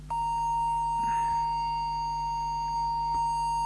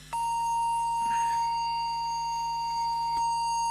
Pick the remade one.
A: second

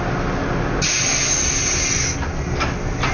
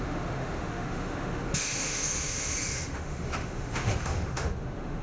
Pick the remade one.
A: second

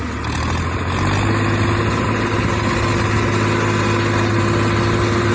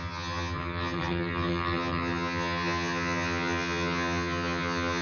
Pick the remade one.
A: second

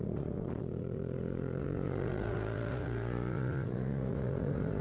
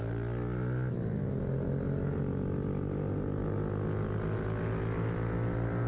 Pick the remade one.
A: first